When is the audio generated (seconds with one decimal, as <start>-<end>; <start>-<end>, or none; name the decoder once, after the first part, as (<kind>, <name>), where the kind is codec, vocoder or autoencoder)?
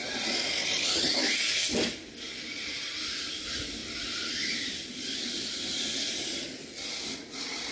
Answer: 1.5-3.1 (vocoder, BigVGAN v2); 3.8-4.9